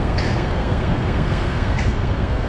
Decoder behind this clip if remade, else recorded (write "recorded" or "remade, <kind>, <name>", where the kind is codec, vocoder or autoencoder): remade, codec, SNAC